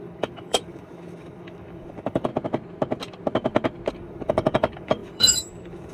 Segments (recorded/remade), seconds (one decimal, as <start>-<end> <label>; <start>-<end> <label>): 0.0-2.3 remade; 2.3-3.9 recorded; 3.9-5.9 remade

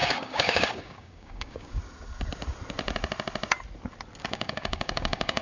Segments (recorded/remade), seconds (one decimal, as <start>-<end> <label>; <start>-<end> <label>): 0.0-1.8 remade; 1.8-4.2 recorded; 4.2-5.4 remade